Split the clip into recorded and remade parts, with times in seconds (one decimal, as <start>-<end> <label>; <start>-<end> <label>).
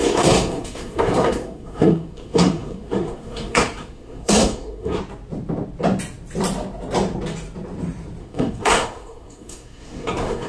0.0-5.0 remade; 5.0-8.2 recorded; 8.2-10.5 remade